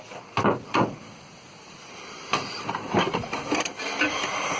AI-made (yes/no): no